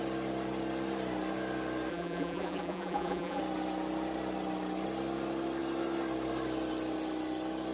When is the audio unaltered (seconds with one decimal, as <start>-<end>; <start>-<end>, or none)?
0.0-1.9; 3.4-7.7